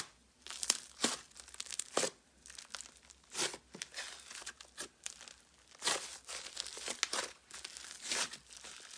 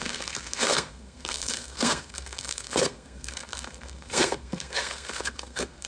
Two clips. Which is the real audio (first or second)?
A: first